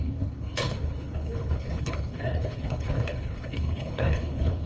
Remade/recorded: remade